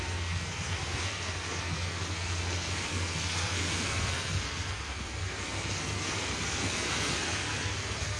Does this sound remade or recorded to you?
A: remade